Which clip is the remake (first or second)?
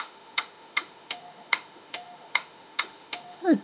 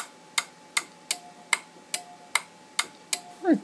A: first